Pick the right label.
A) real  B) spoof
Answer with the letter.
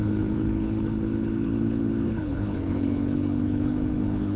B